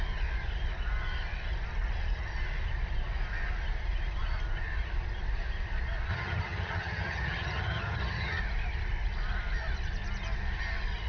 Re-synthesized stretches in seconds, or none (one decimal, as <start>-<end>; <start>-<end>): 6.1-8.4